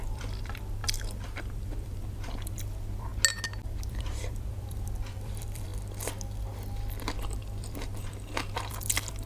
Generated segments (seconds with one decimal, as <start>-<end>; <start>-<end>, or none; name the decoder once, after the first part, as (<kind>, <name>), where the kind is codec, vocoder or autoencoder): 0.0-3.1 (vocoder, BigVGAN v2); 3.9-5.7; 7.4-9.3